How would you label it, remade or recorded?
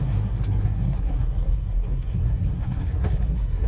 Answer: remade